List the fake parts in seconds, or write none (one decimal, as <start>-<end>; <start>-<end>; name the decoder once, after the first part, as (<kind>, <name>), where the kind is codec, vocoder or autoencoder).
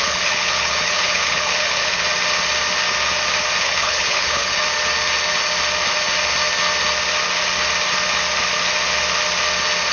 0.0-2.0 (codec, HILCodec); 3.6-4.6